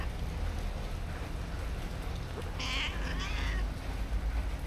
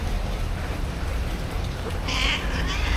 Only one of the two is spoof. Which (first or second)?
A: second